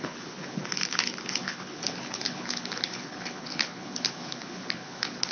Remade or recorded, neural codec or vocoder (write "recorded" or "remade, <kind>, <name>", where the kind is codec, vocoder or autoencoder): remade, codec, HILCodec